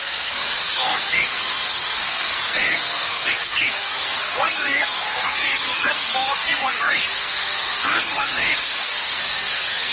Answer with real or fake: fake